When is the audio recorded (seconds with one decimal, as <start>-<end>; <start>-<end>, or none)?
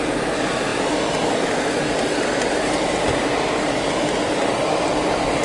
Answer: 0.0-5.4